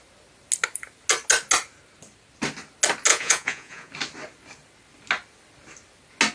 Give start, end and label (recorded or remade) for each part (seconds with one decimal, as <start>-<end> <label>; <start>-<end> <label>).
0.0-3.1 recorded; 3.1-3.9 remade; 3.9-6.3 recorded